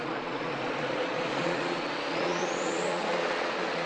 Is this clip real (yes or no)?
no